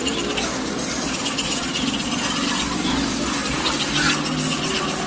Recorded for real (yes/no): yes